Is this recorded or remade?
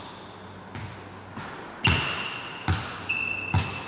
recorded